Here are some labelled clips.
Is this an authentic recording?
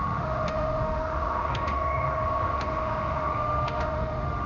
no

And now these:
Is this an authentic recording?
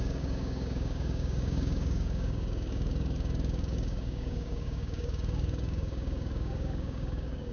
no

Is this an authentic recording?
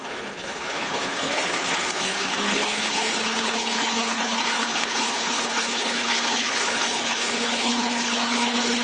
no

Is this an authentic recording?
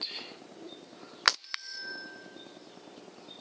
yes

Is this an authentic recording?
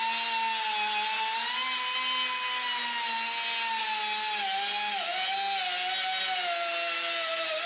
yes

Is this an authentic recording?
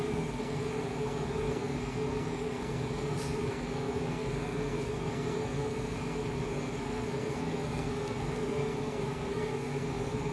no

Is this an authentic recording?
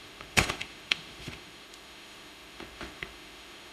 no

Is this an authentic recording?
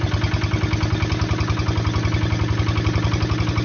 yes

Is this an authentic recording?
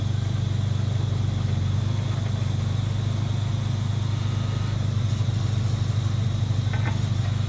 yes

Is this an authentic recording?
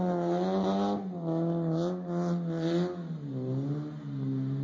yes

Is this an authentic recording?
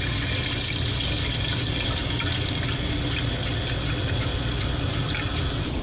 yes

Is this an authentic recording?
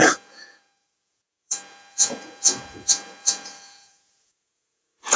no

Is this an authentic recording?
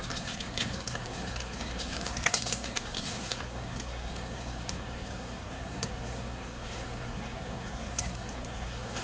no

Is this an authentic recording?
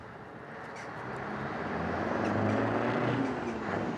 yes